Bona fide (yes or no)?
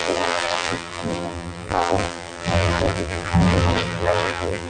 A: no